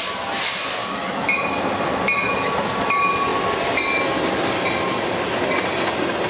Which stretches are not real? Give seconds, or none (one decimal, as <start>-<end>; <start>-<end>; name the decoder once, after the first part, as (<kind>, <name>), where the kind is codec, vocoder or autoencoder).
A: 0.8-1.4 (autoencoder, DAC-VAE)